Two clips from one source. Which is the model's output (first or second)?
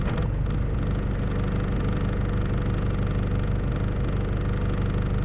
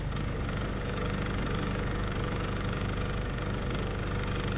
second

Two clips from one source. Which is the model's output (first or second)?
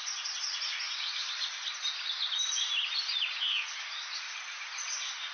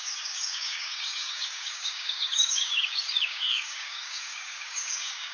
second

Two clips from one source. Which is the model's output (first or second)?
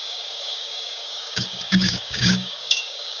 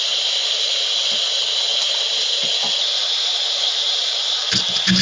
first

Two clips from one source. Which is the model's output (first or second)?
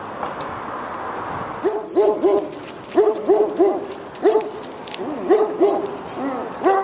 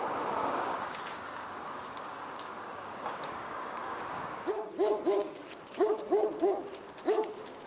second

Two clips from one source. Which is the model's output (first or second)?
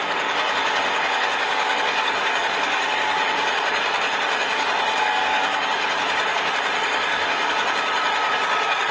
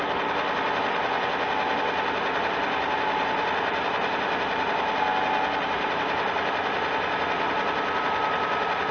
first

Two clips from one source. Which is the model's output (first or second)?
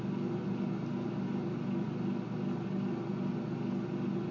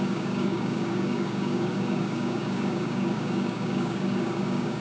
second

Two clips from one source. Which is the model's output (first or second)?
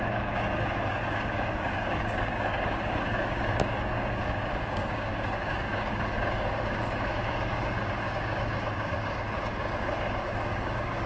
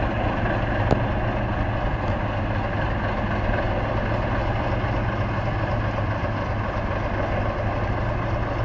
first